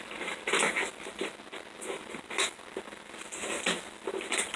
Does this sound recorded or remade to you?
recorded